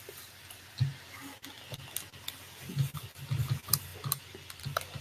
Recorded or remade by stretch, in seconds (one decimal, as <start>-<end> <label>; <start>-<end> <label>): 0.0-5.0 recorded